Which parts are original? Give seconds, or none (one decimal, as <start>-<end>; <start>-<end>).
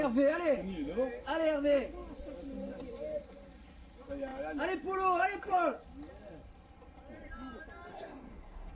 0.0-7.9